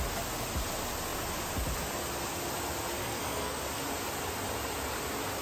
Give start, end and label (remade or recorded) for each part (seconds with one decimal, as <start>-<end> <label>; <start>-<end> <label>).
0.0-3.0 recorded; 3.0-3.6 remade; 3.6-5.4 recorded

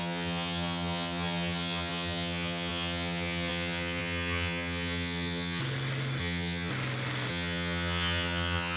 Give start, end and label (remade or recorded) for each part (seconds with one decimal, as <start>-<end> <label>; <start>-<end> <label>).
0.0-5.6 remade; 5.6-6.2 recorded; 6.2-6.7 remade; 6.7-7.3 recorded; 7.3-8.8 remade

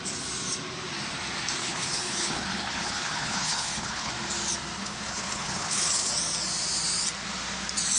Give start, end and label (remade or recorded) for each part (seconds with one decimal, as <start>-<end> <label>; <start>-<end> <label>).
0.0-1.6 recorded; 1.6-4.1 remade; 4.1-4.8 recorded; 4.8-6.1 remade; 6.1-8.0 recorded

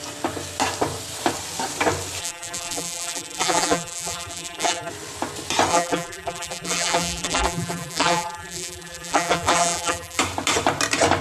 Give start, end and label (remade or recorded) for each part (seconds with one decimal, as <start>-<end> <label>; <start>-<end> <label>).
0.0-2.2 recorded; 2.2-4.9 remade; 4.9-5.7 recorded; 5.7-10.2 remade; 10.2-11.2 recorded